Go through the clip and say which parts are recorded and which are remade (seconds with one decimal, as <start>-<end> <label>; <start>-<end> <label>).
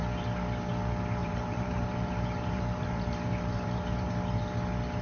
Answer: 0.0-1.2 recorded; 1.2-4.1 remade; 4.1-5.0 recorded